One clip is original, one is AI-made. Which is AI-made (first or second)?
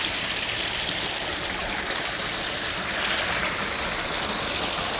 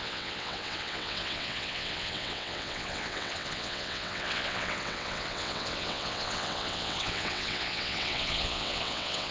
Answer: second